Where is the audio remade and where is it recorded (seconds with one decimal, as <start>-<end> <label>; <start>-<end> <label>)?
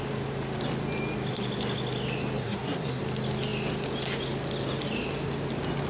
0.0-2.4 recorded; 2.4-3.0 remade; 3.0-5.9 recorded